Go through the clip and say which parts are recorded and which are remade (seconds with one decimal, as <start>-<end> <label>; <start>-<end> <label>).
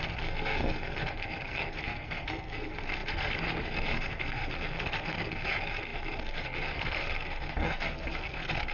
0.0-8.7 remade